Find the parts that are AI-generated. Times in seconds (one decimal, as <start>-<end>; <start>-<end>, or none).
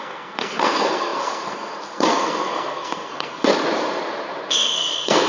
0.0-3.5; 4.5-5.3